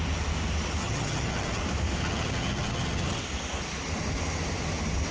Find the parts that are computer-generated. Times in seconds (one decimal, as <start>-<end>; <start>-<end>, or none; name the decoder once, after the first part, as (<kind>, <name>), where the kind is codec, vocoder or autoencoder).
0.8-1.6 (vocoder, HiFi-GAN); 2.0-3.2